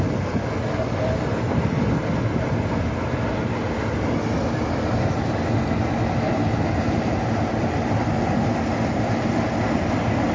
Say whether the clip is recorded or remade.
recorded